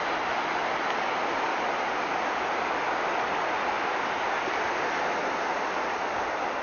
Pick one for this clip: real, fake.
real